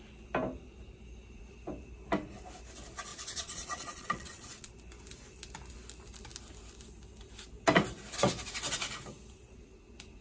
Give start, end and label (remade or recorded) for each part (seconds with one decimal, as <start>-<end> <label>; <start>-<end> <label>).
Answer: 0.0-3.1 recorded; 3.1-4.7 remade; 4.7-10.2 recorded